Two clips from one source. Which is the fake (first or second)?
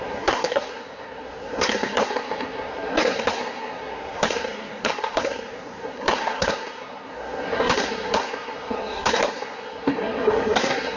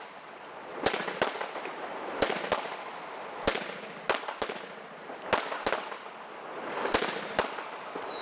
first